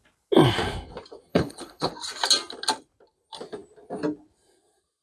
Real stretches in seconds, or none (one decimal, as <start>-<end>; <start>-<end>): 0.0-1.3; 1.9-5.0